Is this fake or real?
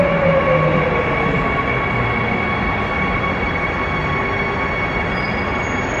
real